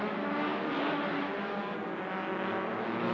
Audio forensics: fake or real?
real